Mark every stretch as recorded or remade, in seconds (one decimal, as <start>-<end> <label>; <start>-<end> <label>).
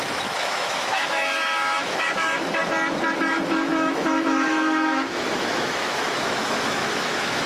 0.0-2.6 remade; 2.6-3.3 recorded; 3.3-7.5 remade